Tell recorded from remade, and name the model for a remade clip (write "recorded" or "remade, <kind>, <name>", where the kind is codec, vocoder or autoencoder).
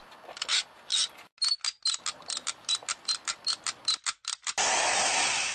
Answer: recorded